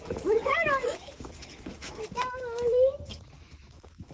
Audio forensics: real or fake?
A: fake